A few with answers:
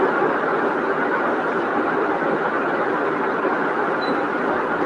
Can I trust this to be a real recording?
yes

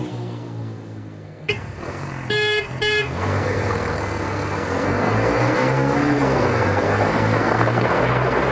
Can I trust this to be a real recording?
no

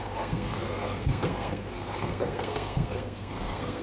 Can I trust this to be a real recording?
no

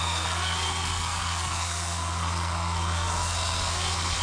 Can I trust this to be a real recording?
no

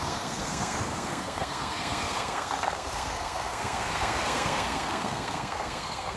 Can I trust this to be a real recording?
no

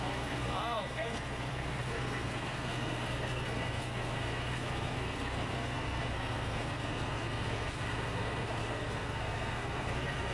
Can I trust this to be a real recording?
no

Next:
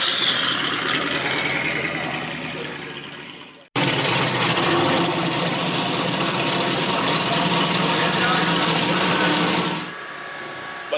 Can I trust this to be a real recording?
yes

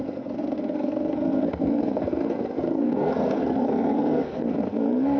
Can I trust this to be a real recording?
no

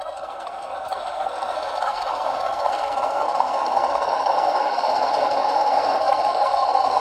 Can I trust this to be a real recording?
no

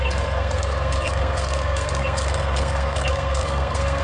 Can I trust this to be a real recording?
no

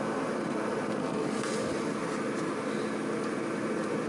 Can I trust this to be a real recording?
yes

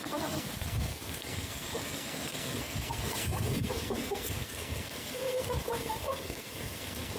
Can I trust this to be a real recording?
no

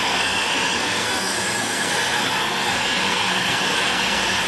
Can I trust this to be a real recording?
no